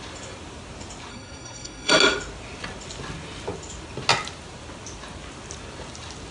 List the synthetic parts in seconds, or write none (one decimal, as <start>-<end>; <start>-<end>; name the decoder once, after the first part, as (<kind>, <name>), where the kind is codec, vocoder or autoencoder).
1.1-1.9 (codec, SNAC)